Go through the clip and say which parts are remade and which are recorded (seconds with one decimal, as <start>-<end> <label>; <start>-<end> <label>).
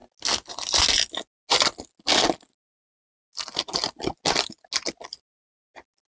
0.0-6.2 recorded